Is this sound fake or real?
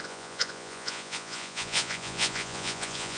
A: fake